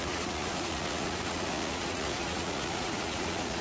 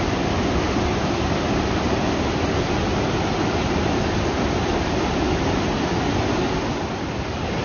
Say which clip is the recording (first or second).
second